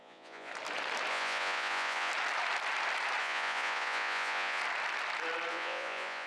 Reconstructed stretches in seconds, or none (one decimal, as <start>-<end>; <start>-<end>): 0.0-0.5; 1.1-2.1; 3.2-4.6; 5.5-6.3